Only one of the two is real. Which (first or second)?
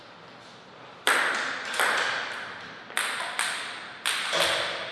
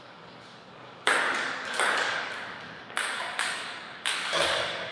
first